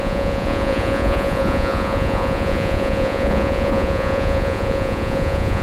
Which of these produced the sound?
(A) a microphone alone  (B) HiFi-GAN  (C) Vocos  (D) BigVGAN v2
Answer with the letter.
C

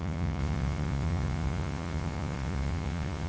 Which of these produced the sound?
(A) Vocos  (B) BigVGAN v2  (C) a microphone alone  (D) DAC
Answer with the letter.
A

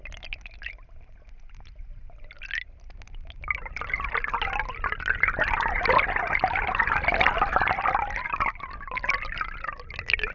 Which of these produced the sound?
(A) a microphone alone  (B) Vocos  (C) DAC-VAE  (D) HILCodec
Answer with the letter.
A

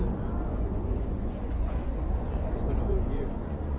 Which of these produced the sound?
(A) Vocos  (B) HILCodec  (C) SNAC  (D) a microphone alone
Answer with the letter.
A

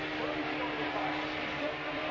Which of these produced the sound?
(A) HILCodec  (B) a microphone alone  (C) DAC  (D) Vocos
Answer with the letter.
B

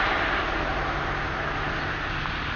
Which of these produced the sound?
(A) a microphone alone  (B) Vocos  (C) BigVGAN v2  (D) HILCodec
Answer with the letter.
A